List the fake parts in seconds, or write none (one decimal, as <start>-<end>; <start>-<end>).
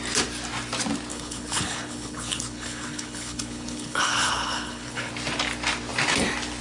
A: 1.1-5.1